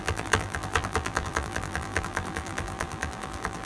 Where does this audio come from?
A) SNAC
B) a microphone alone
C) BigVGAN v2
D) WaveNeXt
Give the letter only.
C